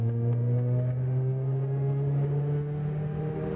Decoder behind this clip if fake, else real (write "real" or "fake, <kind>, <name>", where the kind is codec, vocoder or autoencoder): fake, autoencoder, DAC-VAE